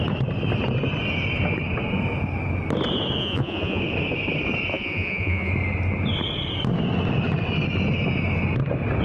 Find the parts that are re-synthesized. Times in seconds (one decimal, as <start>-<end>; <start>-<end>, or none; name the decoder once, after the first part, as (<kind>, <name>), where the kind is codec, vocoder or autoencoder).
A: 3.2-3.8 (vocoder, Vocos); 4.7-5.5